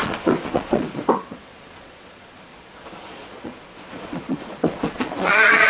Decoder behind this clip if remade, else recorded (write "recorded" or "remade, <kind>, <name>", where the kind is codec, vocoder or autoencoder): remade, vocoder, Vocos